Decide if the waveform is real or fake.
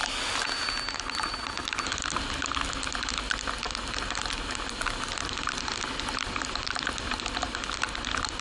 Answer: real